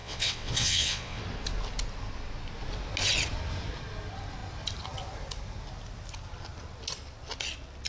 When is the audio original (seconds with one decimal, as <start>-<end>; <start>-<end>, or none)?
1.2-7.9

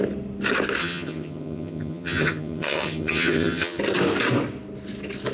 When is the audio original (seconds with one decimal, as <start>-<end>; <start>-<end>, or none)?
0.0-0.8; 3.8-5.3

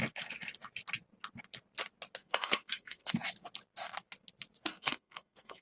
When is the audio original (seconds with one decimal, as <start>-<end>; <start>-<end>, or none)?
0.0-2.2; 3.1-4.7